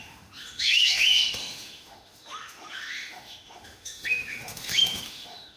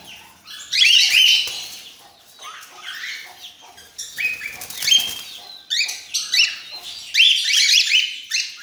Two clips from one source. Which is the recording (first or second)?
second